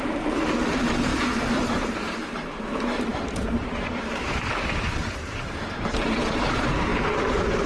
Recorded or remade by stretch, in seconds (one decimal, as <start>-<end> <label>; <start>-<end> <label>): 0.0-7.7 remade